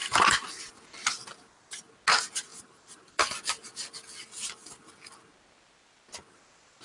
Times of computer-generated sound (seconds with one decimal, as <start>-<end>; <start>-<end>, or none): 0.0-0.9; 2.5-3.5